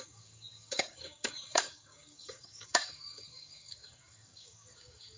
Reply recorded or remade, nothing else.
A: remade